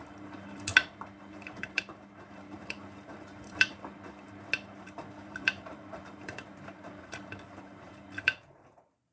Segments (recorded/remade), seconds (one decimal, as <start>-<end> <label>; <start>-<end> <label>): 0.0-0.7 remade; 0.7-1.2 recorded; 1.2-1.8 remade; 1.8-2.3 recorded; 2.3-3.7 remade; 3.7-4.8 recorded; 4.8-9.1 remade